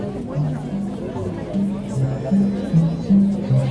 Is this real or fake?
real